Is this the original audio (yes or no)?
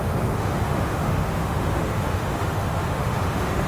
no